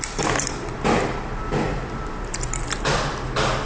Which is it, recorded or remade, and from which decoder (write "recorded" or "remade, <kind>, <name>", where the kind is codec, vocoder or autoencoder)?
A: remade, vocoder, BigVGAN v2